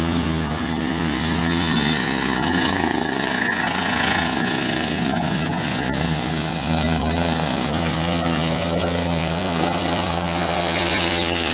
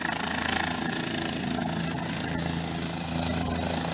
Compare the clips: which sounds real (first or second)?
second